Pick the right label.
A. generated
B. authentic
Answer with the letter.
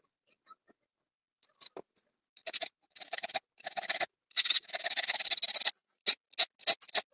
B